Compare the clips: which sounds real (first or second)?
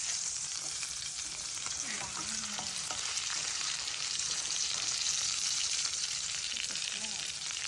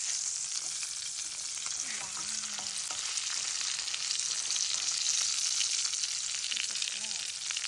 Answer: second